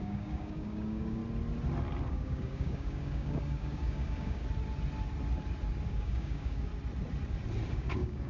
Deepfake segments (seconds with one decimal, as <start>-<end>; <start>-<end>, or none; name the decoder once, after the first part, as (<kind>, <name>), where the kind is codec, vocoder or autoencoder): 0.0-1.2 (codec, DAC); 2.1-4.4; 5.9-6.7; 7.7-8.3